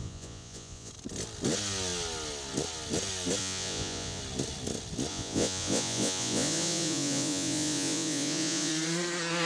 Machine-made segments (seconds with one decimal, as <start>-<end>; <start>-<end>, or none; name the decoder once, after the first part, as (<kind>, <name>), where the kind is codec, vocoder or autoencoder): 0.0-0.9 (vocoder, Vocos); 3.4-4.2; 5.1-8.7